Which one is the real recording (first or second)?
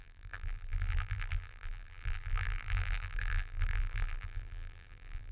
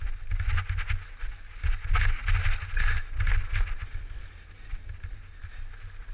second